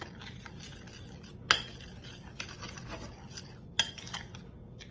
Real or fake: real